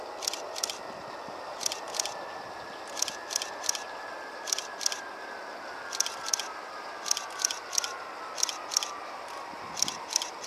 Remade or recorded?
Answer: recorded